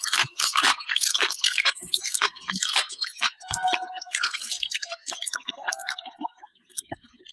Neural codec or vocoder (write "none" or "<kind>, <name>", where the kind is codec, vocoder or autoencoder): codec, SNAC